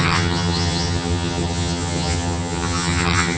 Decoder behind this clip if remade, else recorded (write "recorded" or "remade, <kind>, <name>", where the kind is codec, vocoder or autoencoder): remade, vocoder, HiFi-GAN